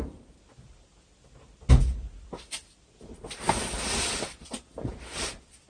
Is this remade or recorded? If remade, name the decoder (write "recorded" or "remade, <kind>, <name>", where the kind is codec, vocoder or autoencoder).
recorded